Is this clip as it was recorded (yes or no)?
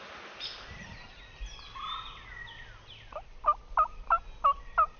yes